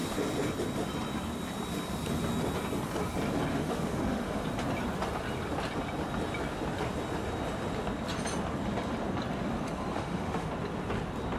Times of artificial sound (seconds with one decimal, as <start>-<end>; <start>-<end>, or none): 3.5-4.4; 9.9-10.5

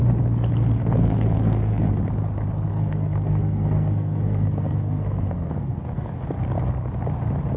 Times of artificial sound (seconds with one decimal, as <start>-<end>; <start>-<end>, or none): 0.8-1.9; 2.7-6.2

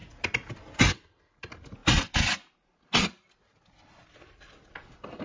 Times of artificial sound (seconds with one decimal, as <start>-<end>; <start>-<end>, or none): none

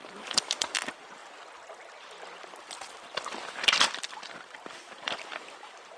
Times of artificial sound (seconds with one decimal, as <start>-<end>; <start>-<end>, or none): 0.0-1.2; 2.0-6.0

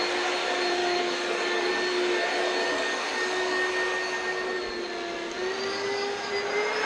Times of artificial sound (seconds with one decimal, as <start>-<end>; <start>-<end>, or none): 0.8-1.7; 2.6-3.7; 5.7-6.3

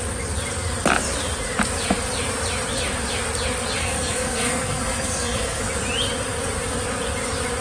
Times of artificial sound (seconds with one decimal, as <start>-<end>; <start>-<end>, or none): 3.8-5.6

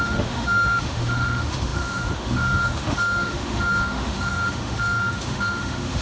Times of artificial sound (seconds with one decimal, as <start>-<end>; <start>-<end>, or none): 0.0-6.0